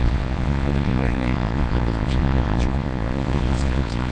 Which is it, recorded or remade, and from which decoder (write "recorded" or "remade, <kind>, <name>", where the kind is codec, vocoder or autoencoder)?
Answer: remade, vocoder, Vocos